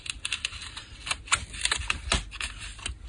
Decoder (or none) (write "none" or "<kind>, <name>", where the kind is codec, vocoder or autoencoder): none